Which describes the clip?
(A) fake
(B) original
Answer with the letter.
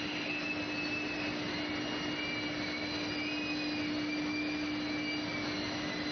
B